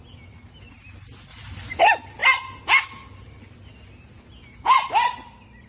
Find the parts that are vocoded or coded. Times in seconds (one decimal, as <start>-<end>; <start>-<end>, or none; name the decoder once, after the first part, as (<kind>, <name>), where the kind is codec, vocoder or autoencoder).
none